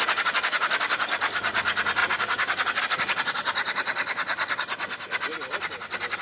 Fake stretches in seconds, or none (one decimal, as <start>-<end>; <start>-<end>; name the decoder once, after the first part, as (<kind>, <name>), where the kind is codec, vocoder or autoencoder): none